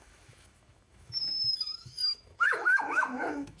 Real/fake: fake